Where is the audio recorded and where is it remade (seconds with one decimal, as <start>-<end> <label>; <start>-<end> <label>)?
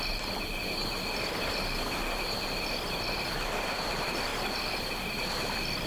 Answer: 0.0-5.9 recorded